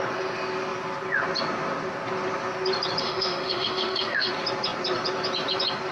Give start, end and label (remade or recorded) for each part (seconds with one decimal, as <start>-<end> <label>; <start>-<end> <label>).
0.0-3.0 recorded; 3.0-4.3 remade; 4.3-5.9 recorded